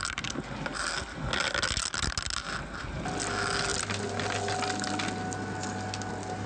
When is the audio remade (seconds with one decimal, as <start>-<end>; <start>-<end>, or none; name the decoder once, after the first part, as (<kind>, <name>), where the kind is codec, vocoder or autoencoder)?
none